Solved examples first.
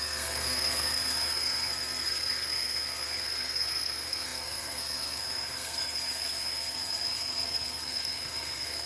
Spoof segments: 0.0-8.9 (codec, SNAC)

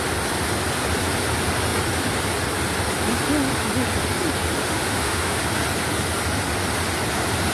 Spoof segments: 4.6-5.4 (autoencoder, DAC-VAE)

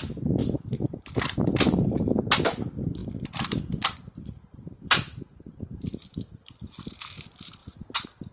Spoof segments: 0.4-1.0 (vocoder, BigVGAN v2); 3.0-7.0; 7.6-8.3

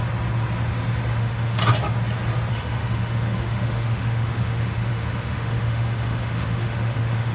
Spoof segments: 1.2-1.6 (autoencoder, DAC-VAE); 2.5-7.3

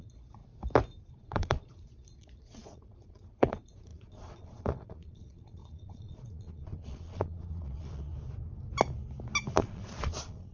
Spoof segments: 0.0-0.4 (vocoder, Vocos); 1.1-8.1; 9.5-10.5

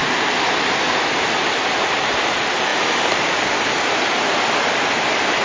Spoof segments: none

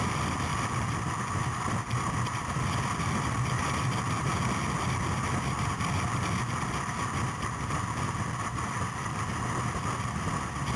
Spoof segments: none

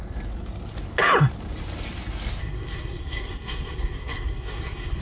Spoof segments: 2.4-5.0 (codec, SNAC)